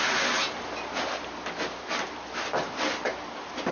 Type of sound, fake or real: real